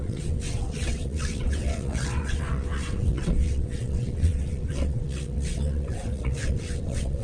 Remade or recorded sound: remade